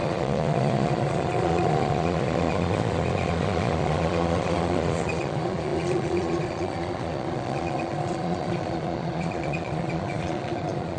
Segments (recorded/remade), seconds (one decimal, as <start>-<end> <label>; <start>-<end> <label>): 0.0-11.0 remade

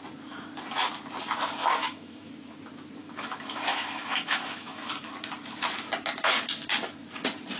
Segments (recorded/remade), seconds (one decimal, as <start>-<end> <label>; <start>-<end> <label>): 0.0-1.6 recorded; 1.6-2.3 remade; 2.3-3.0 recorded; 3.0-4.9 remade; 4.9-7.6 recorded

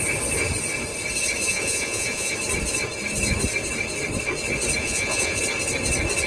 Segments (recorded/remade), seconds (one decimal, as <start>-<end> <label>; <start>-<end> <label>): 0.0-1.5 recorded; 1.5-2.3 remade; 2.3-4.8 recorded; 4.8-5.4 remade; 5.4-6.3 recorded

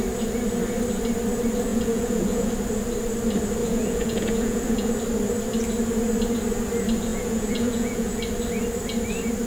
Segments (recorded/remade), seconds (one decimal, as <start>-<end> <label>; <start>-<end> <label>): 0.0-1.7 recorded; 1.7-2.5 remade; 2.5-3.6 recorded; 3.6-4.9 remade; 4.9-7.1 recorded; 7.1-8.2 remade; 8.2-9.5 recorded

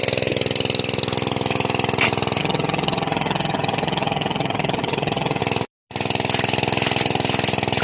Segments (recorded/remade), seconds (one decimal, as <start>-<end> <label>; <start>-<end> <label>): 0.0-2.4 recorded; 2.4-5.4 remade; 5.4-7.8 recorded

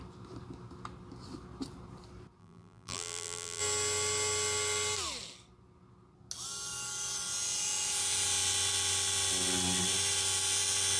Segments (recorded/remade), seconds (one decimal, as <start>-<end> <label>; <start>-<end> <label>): 0.0-2.4 recorded; 2.4-3.6 remade; 3.6-11.0 recorded